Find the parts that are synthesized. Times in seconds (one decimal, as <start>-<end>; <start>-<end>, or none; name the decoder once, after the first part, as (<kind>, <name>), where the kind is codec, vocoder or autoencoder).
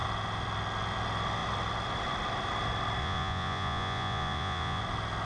3.0-4.8 (vocoder, Vocos)